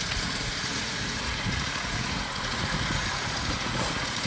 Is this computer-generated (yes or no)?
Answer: yes